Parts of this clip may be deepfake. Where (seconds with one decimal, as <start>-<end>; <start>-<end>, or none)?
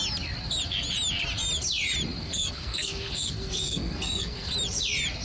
2.2-4.5